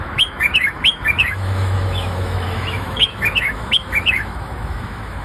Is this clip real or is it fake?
fake